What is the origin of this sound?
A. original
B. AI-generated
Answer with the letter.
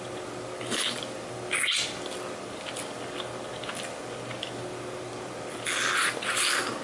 A